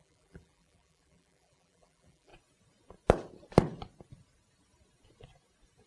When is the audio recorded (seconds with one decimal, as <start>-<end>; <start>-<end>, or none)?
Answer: 2.3-5.9